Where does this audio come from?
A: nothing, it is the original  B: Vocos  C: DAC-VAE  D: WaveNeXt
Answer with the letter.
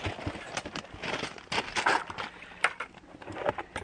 A